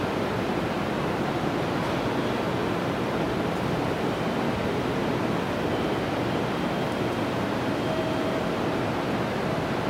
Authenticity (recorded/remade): recorded